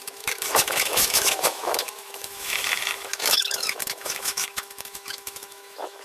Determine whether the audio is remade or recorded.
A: remade